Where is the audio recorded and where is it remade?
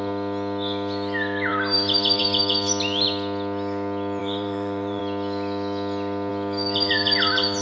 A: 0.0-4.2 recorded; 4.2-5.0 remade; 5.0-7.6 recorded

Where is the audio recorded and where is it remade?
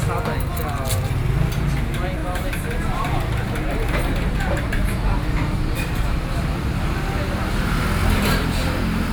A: 0.0-2.2 recorded; 2.2-6.6 remade; 6.6-8.0 recorded; 8.0-9.1 remade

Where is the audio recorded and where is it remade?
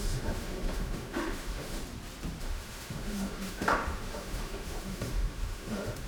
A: 0.0-1.8 remade; 1.8-2.4 recorded; 2.4-6.1 remade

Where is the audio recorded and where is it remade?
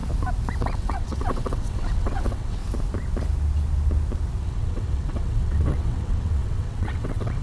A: 0.0-0.6 recorded; 0.6-2.6 remade; 2.6-4.4 recorded; 4.4-7.4 remade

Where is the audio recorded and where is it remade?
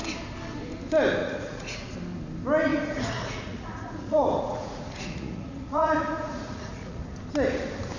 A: 0.0-1.2 recorded; 1.2-1.9 remade; 1.9-2.7 recorded; 2.7-7.0 remade; 7.0-8.0 recorded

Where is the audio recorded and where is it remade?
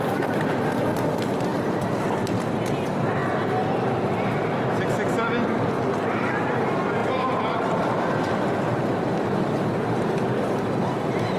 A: 0.0-11.4 recorded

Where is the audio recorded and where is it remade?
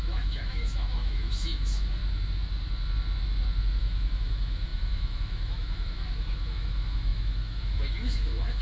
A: 0.0-2.0 remade; 2.0-3.8 recorded; 3.8-8.6 remade